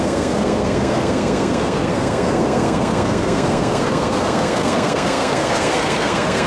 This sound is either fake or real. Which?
fake